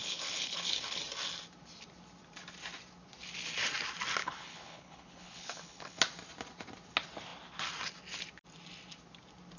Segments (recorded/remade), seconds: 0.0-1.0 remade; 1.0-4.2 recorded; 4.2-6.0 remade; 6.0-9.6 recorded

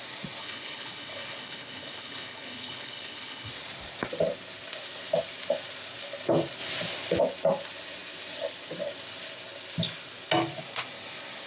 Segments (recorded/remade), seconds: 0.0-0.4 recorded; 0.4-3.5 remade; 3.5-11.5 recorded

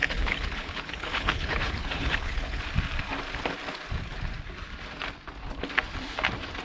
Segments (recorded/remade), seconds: 0.0-2.6 remade; 2.6-6.6 recorded

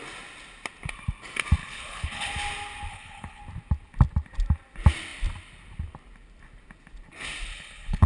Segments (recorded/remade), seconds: 0.0-1.6 recorded; 1.6-2.3 remade; 2.3-2.9 recorded; 2.9-3.4 remade; 3.4-7.5 recorded; 7.5-8.1 remade